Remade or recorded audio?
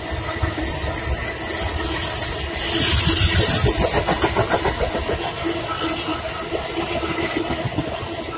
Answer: recorded